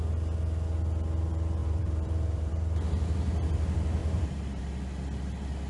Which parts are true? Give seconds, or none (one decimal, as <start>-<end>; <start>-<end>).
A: 0.0-1.6; 2.5-4.0; 4.6-5.7

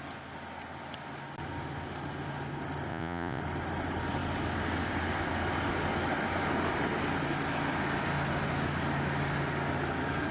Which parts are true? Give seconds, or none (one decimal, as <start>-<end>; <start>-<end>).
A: 0.0-2.9; 3.4-10.3

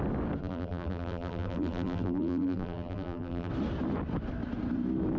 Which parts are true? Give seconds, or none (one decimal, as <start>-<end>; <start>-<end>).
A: 0.0-0.4; 3.5-5.2